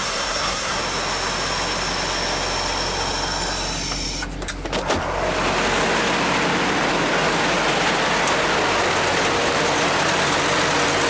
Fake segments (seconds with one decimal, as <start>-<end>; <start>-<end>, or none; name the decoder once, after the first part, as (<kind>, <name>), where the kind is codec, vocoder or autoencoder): 0.0-0.8 (codec, SNAC)